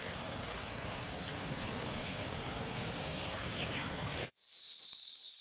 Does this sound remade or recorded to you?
remade